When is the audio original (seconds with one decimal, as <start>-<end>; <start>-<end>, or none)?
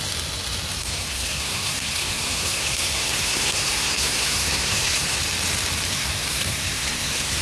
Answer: 0.0-0.8; 5.2-5.9